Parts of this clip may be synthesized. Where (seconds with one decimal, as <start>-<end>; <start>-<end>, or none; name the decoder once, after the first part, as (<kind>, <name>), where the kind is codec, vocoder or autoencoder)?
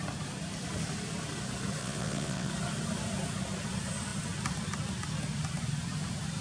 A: 1.8-2.5 (vocoder, WaveNeXt)